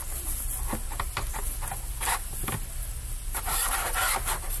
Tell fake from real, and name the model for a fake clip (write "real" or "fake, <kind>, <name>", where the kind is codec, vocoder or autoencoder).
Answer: real